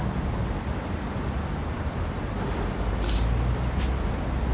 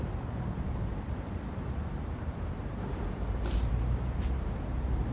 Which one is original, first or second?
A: first